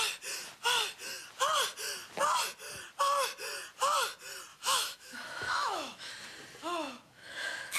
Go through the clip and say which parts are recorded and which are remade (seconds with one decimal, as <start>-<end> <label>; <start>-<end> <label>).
0.0-4.5 recorded; 4.5-6.1 remade; 6.1-6.6 recorded; 6.6-7.8 remade